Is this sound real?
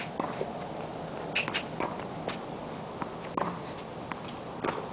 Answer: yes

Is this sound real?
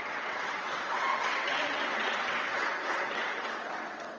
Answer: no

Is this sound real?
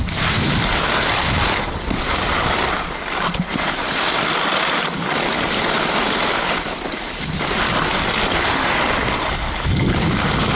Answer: yes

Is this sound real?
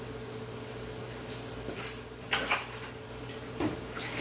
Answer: yes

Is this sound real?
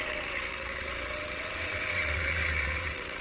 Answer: no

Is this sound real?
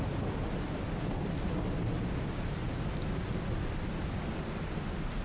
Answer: yes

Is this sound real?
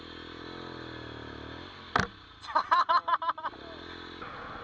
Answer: yes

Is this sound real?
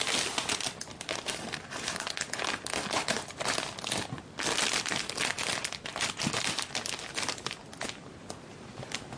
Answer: yes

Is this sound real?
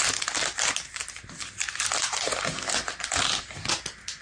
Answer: yes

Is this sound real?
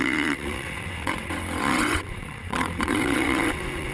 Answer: no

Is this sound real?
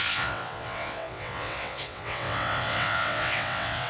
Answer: no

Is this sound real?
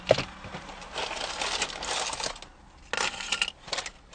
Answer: yes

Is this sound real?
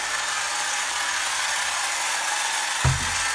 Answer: yes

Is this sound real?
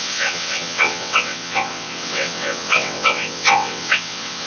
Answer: no